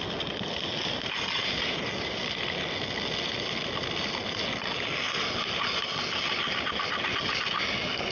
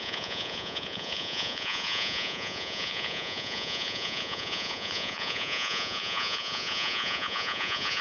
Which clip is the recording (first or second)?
first